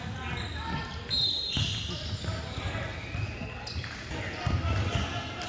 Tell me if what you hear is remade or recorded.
recorded